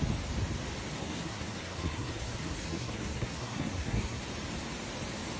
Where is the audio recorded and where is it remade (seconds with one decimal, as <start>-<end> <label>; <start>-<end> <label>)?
0.0-1.0 recorded; 1.0-4.2 remade; 4.2-5.4 recorded